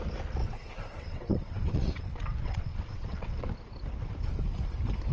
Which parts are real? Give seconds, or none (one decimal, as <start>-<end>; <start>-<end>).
0.0-0.4; 3.5-5.1